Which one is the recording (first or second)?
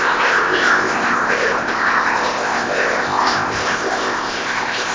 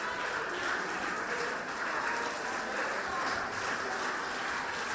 second